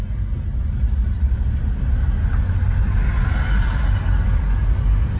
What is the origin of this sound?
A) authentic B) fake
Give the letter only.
A